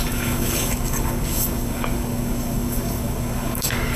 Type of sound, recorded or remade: remade